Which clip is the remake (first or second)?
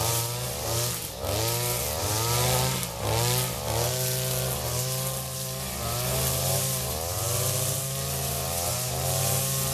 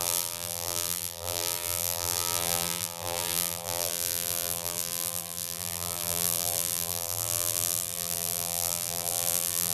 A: second